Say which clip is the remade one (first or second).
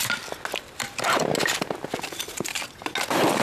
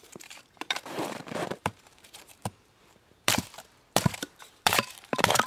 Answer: second